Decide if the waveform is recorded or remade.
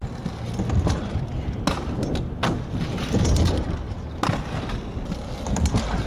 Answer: recorded